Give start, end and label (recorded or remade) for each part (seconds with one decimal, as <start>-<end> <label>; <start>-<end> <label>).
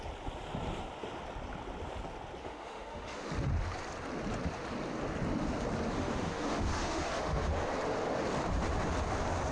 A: 0.0-2.4 recorded; 2.4-3.3 remade; 3.3-5.9 recorded; 5.9-7.7 remade; 7.7-9.5 recorded